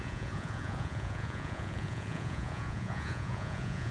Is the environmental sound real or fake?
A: fake